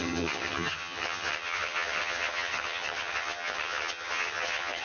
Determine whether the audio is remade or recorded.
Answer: remade